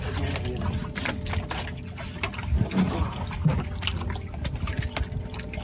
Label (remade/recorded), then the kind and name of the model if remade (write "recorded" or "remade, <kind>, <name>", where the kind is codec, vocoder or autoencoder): recorded